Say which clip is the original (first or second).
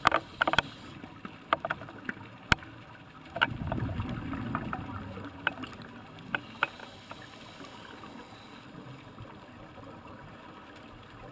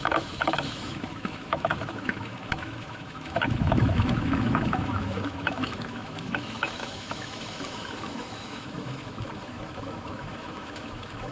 first